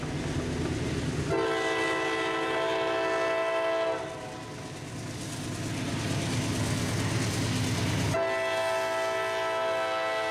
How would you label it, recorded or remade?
recorded